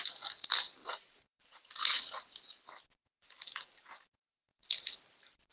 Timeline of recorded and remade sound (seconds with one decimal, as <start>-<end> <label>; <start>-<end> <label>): 0.0-0.8 recorded; 0.8-2.3 remade; 2.3-3.0 recorded; 3.0-5.0 remade; 5.0-5.5 recorded